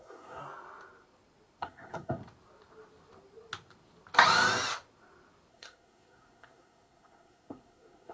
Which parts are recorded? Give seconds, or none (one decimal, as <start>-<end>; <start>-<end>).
0.4-1.6; 2.2-5.5

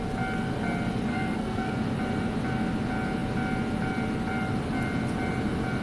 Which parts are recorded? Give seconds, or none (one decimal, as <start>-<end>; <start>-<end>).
0.0-1.1; 1.7-5.8

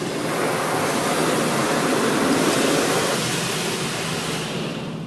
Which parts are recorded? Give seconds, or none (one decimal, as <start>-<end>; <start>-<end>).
0.0-5.1